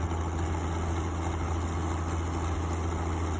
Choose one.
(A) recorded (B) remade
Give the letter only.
A